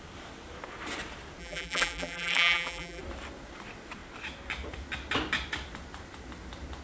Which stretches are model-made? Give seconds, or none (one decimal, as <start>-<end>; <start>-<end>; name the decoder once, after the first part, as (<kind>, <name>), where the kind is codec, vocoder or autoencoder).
1.4-3.0 (vocoder, BigVGAN v2)